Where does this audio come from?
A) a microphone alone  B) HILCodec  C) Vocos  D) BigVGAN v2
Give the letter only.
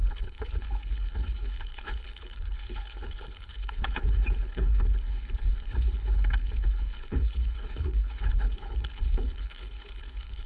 B